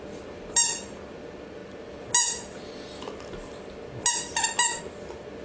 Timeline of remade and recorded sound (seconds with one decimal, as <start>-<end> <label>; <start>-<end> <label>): 0.0-5.4 recorded

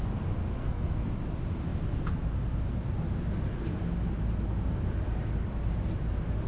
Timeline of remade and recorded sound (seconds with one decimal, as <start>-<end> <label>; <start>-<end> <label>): 0.0-0.6 recorded; 0.6-1.1 remade; 1.1-6.5 recorded